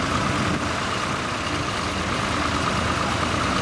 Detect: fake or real real